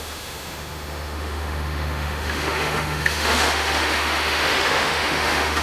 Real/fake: fake